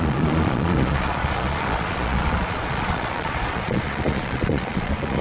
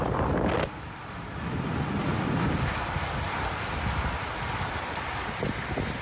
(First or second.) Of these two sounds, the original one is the second